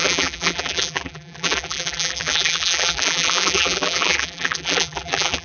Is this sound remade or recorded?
remade